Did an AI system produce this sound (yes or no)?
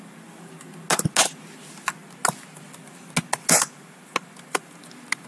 no